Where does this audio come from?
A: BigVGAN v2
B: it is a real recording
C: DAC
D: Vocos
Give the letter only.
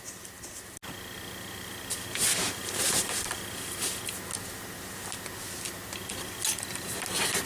B